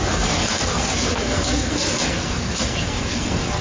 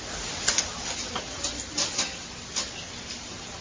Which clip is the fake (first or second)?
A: first